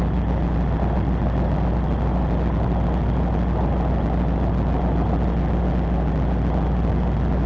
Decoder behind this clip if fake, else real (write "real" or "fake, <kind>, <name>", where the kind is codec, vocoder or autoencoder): real